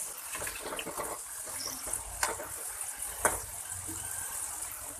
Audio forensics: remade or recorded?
recorded